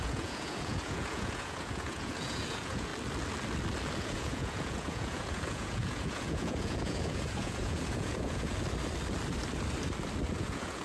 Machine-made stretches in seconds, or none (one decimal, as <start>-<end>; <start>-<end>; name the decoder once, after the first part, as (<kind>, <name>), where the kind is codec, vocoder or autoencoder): 0.0-2.9 (vocoder, Vocos); 4.0-8.5; 10.3-10.8